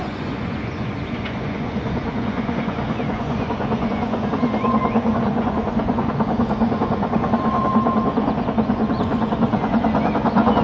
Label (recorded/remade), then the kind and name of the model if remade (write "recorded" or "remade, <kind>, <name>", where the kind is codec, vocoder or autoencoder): remade, vocoder, Vocos